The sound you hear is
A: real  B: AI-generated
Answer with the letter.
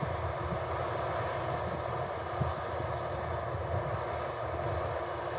A